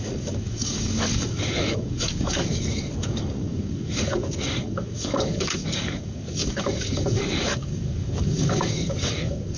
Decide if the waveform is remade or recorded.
remade